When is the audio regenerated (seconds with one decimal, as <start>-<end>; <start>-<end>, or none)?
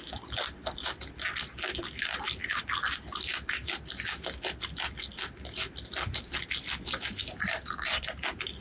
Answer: none